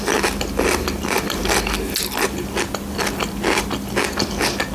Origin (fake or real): real